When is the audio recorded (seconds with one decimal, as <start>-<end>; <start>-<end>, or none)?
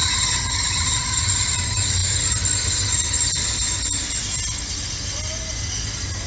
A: 0.0-6.3